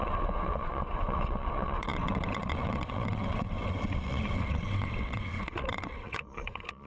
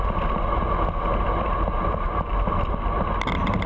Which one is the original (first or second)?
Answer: second